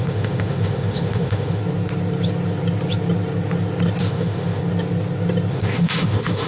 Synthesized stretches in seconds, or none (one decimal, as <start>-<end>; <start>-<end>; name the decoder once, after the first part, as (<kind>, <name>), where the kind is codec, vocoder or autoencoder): 0.0-1.6 (autoencoder, DAC-VAE); 4.0-4.6; 5.5-6.5